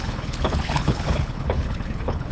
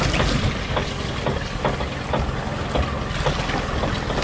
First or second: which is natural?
second